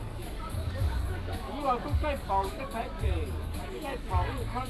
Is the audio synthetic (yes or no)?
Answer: yes